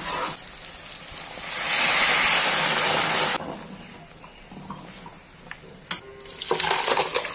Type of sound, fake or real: real